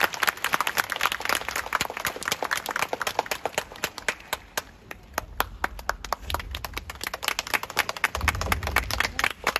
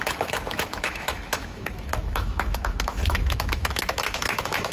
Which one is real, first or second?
first